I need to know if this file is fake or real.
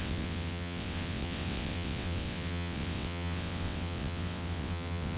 fake